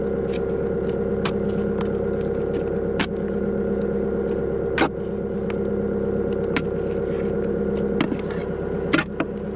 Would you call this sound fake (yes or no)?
no